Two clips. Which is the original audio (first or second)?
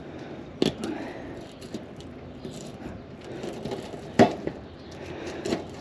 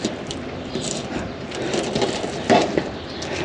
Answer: first